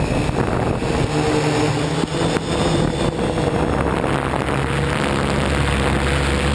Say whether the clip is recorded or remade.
recorded